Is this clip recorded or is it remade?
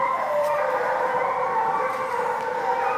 remade